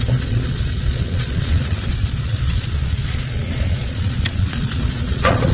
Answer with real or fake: fake